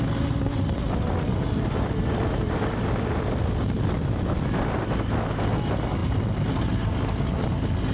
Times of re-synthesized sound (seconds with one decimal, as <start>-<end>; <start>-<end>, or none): none